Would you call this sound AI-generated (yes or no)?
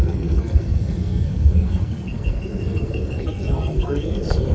yes